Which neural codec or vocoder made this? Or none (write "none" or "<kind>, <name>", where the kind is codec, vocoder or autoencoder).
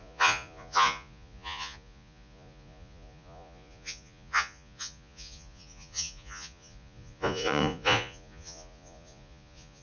vocoder, Vocos